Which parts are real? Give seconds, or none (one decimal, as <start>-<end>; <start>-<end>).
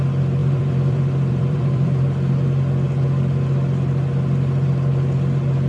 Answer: 0.0-0.4; 2.0-5.7